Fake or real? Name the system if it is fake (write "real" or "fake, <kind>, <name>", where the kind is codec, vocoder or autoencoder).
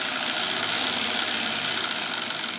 real